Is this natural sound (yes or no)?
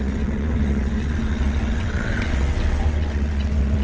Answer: no